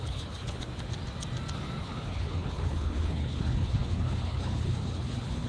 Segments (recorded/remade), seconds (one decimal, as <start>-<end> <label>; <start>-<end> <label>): 0.0-0.7 remade; 0.7-1.8 recorded; 1.8-5.5 remade